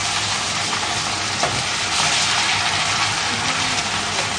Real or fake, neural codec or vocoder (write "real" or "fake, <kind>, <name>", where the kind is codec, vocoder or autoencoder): real